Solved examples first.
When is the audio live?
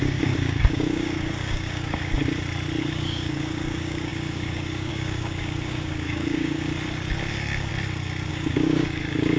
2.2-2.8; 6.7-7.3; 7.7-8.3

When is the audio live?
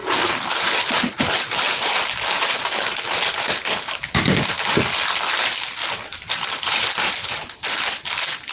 5.8-6.3